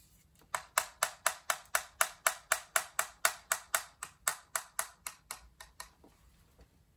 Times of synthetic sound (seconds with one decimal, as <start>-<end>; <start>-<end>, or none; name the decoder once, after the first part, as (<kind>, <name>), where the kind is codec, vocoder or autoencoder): none